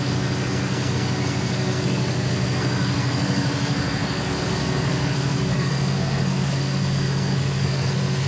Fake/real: fake